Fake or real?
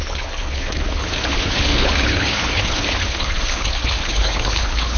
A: fake